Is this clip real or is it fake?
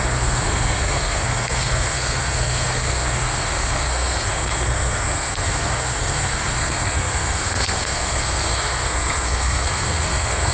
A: fake